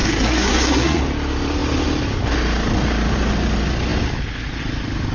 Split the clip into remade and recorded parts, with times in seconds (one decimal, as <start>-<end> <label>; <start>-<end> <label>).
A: 0.0-1.0 remade; 1.0-5.1 recorded